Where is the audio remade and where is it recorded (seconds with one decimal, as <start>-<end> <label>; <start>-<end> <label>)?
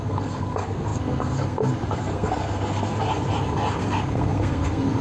0.0-2.9 remade; 2.9-3.8 recorded; 3.8-5.0 remade